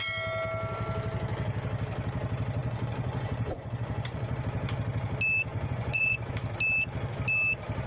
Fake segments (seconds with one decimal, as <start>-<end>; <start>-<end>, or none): 2.6-4.4; 5.5-6.3